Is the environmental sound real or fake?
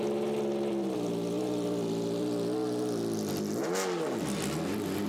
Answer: real